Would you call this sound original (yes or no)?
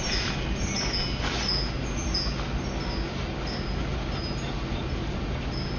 yes